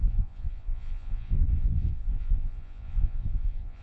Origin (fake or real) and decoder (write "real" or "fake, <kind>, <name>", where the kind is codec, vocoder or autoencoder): fake, vocoder, Vocos